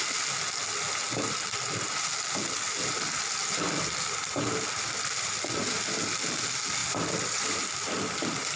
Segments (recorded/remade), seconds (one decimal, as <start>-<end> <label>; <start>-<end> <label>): 0.0-3.4 recorded; 3.4-4.3 remade; 4.3-6.8 recorded; 6.8-8.6 remade